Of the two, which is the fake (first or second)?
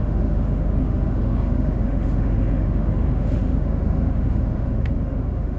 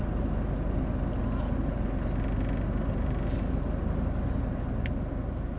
first